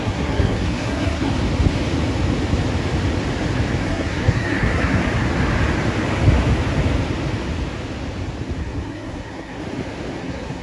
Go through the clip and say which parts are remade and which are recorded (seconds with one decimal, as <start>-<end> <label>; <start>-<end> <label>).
0.0-1.3 remade; 1.3-3.8 recorded; 3.8-5.0 remade; 5.0-8.6 recorded; 8.6-9.6 remade; 9.6-10.2 recorded; 10.2-10.6 remade